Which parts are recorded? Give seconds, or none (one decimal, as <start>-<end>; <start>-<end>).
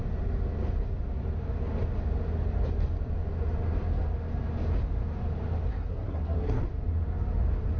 0.0-5.7; 6.6-7.8